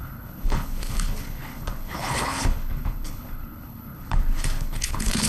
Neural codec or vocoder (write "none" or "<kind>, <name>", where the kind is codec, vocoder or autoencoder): codec, HILCodec